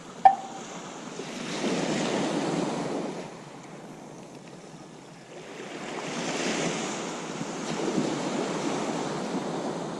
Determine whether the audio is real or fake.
real